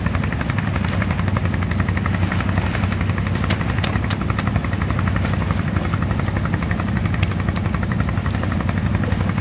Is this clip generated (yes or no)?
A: no